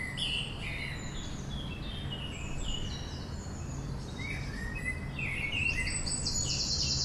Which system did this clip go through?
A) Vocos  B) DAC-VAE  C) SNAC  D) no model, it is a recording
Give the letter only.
D